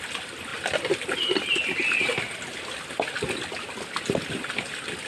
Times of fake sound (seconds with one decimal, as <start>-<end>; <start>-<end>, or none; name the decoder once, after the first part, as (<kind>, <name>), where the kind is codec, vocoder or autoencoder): none